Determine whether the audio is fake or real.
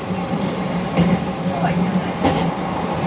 fake